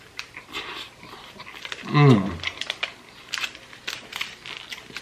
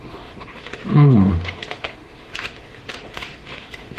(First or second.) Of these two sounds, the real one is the first